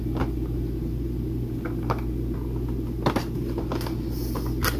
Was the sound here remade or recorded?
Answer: recorded